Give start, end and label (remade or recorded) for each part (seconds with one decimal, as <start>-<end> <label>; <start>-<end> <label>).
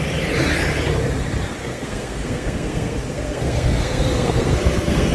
0.0-1.6 recorded; 1.6-5.1 remade